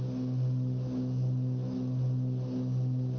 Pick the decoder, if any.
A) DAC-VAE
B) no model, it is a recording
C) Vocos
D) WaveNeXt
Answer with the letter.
B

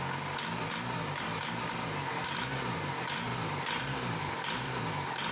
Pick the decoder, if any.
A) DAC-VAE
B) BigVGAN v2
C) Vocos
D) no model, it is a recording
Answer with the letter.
D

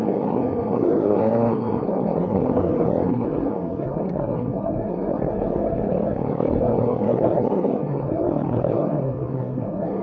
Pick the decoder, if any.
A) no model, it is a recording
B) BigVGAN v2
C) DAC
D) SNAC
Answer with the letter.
D